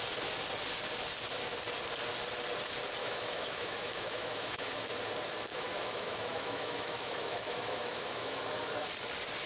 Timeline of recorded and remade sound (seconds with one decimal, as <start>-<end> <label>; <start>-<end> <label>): 0.0-3.0 recorded; 3.0-4.9 remade; 4.9-5.5 recorded; 5.5-8.4 remade; 8.4-9.5 recorded